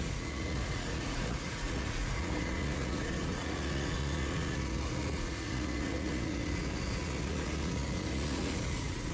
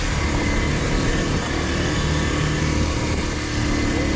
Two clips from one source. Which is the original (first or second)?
second